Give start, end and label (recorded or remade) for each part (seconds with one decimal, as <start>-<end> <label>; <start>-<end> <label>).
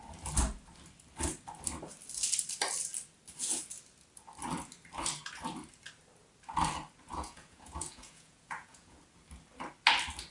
0.0-7.1 recorded; 7.1-9.0 remade; 9.0-10.3 recorded